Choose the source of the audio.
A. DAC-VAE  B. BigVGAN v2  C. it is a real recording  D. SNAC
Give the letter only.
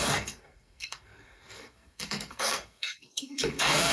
D